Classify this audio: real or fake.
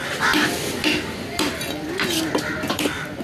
real